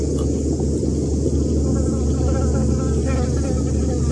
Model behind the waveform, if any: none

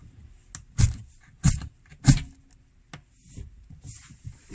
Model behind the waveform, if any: none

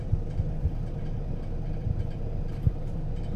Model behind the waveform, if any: vocoder, BigVGAN v2